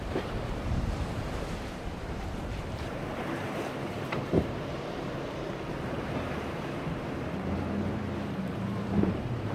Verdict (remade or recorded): remade